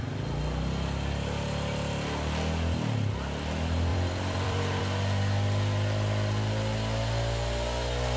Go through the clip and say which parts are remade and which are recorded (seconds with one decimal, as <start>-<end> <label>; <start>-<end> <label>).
0.0-3.9 recorded; 3.9-4.8 remade; 4.8-8.2 recorded